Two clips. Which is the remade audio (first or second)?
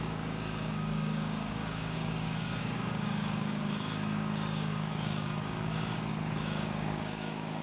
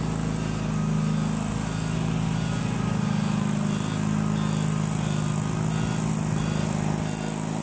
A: first